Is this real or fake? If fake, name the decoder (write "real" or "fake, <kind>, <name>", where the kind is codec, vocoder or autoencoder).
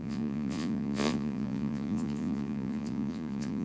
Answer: fake, vocoder, Vocos